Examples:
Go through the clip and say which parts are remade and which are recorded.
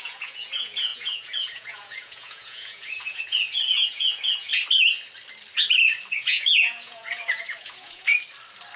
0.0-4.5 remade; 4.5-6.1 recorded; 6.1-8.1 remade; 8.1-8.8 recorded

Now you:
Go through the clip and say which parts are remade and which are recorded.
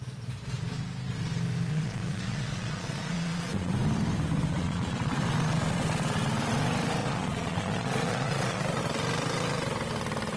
0.0-1.7 recorded; 1.7-3.7 remade; 3.7-4.5 recorded; 4.5-5.1 remade; 5.1-7.0 recorded; 7.0-8.6 remade; 8.6-10.4 recorded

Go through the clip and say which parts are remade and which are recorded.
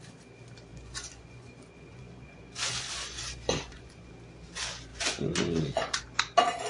0.0-0.7 recorded; 0.7-4.1 remade; 4.1-4.9 recorded; 4.9-6.0 remade; 6.0-6.7 recorded